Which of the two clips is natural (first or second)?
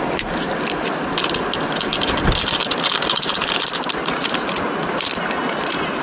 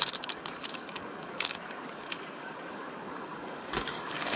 first